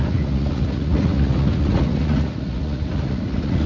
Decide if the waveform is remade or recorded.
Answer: remade